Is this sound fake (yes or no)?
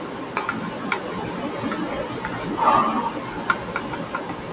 no